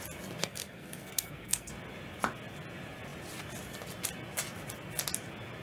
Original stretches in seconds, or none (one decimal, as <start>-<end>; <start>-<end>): 0.0-0.4; 1.7-5.6